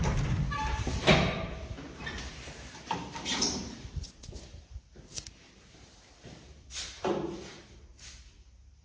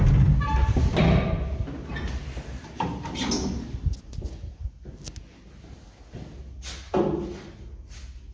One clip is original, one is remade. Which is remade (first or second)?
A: first